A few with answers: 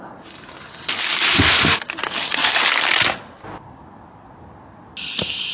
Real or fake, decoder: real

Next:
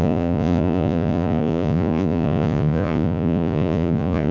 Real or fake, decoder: fake, vocoder, Vocos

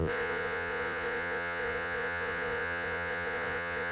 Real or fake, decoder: fake, vocoder, Vocos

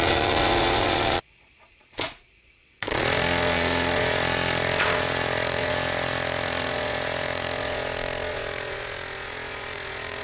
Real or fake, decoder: fake, vocoder, Vocos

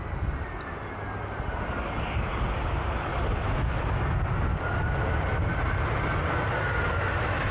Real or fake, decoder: real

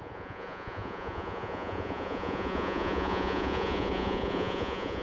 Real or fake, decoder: fake, vocoder, Vocos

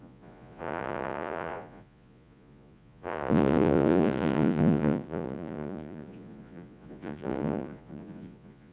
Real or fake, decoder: fake, vocoder, Vocos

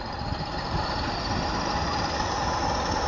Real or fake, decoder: real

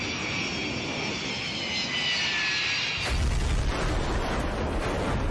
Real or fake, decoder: real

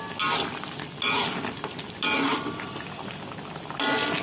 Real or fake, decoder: real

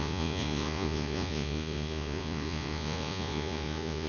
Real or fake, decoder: fake, vocoder, Vocos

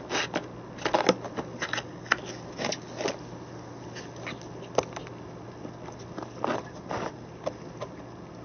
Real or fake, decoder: real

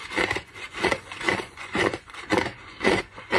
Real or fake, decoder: fake, vocoder, Vocos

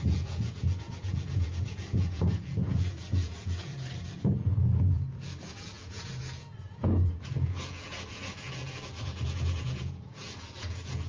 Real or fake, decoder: fake, vocoder, Vocos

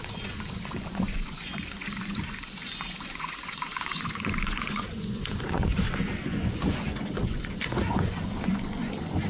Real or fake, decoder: fake, vocoder, Vocos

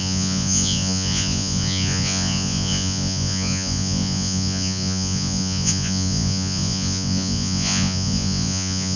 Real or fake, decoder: fake, vocoder, Vocos